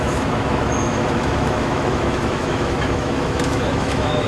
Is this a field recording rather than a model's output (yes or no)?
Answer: no